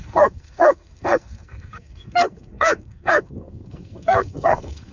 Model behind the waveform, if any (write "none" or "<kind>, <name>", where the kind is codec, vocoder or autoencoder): codec, SNAC